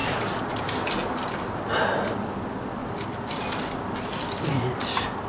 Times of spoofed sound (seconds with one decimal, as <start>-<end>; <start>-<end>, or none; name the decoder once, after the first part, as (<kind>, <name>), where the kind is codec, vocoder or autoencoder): 0.0-0.6 (vocoder, BigVGAN v2); 2.8-5.3